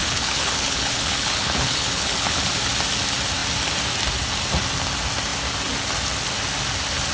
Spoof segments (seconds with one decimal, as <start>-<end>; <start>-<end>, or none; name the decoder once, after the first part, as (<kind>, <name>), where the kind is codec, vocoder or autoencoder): 0.0-2.4 (codec, HILCodec)